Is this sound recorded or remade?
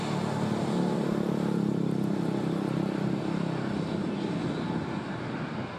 recorded